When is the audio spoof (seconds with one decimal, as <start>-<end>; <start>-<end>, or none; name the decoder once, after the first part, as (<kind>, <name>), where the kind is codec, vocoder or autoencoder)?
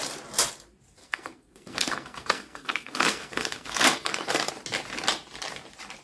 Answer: 1.0-4.5 (codec, SNAC)